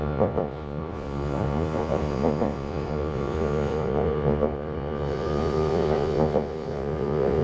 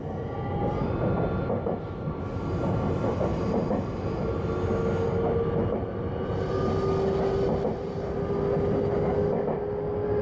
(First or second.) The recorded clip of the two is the second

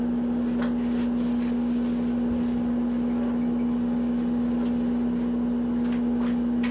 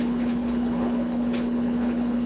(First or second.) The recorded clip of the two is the first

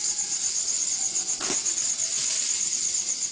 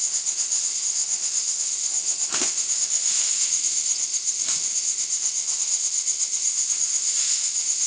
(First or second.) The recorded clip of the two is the first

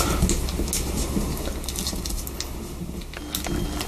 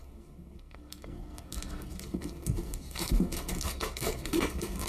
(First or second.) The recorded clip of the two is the first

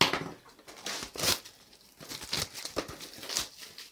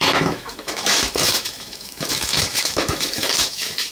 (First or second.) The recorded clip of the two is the first